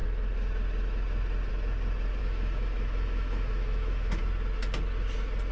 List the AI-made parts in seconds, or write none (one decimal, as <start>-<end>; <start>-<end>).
2.2-4.2

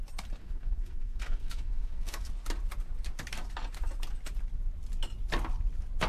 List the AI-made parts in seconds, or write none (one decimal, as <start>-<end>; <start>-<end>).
0.4-2.3